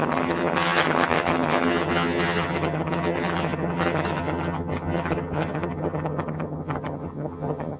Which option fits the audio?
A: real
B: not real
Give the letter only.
B